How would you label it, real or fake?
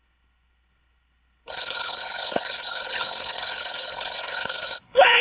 fake